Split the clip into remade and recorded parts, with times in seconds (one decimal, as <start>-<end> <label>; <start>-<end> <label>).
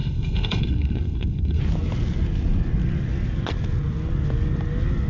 0.0-1.6 remade; 1.6-5.1 recorded